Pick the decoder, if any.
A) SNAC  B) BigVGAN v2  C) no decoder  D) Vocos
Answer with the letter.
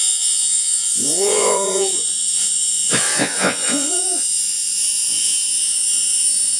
D